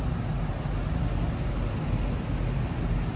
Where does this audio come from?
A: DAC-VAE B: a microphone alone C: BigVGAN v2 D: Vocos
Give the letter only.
B